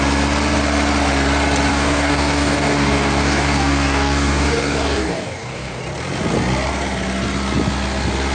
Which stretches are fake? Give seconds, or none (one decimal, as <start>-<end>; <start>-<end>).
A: 1.7-5.8